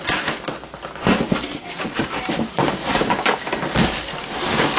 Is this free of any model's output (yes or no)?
yes